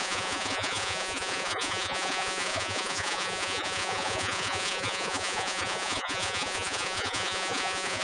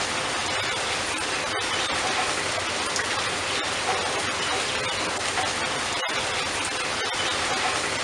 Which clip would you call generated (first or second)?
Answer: first